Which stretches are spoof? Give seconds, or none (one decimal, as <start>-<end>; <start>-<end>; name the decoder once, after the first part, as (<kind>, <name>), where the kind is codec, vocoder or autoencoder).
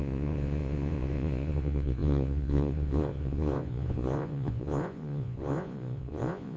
0.0-6.6 (vocoder, Vocos)